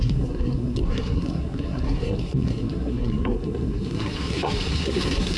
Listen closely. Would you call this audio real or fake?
fake